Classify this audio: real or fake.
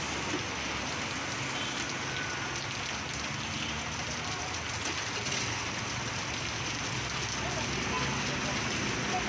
real